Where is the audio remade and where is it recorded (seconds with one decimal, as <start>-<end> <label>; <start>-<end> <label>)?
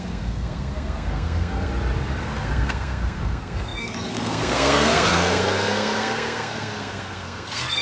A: 0.0-1.7 remade; 1.7-2.2 recorded; 2.2-7.8 remade